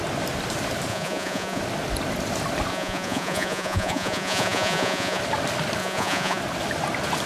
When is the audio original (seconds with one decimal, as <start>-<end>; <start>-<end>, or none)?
0.0-0.9; 1.6-2.7; 5.2-5.8; 6.4-7.3